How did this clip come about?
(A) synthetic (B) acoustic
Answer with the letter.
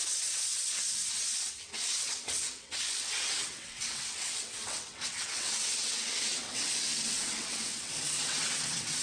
A